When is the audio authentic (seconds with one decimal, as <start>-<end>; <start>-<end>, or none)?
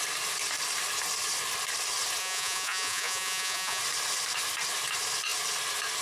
0.0-2.2; 3.8-6.0